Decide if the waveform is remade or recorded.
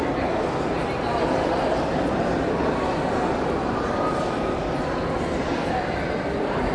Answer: recorded